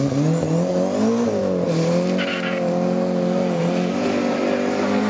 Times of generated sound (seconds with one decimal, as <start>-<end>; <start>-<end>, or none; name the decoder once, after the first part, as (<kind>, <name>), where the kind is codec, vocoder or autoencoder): none